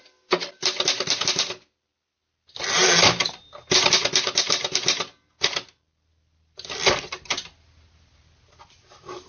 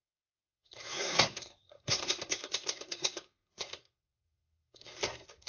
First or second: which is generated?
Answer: second